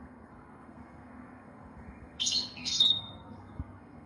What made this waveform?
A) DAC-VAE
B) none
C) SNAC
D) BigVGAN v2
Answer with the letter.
C